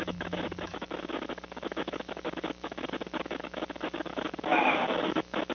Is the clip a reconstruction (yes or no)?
yes